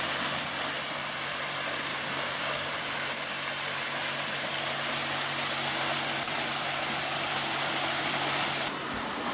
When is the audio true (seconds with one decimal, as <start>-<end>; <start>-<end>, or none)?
0.0-1.9; 2.7-9.3